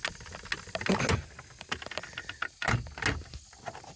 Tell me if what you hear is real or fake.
real